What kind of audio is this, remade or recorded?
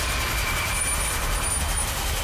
remade